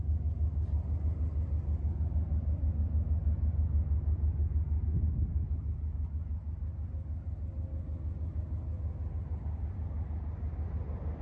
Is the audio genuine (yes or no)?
yes